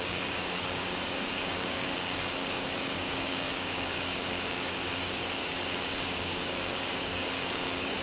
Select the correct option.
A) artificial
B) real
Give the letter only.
A